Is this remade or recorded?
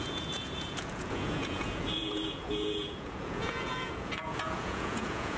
remade